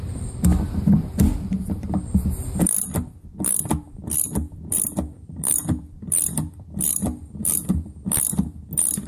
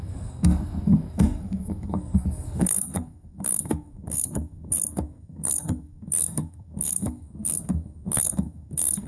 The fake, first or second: second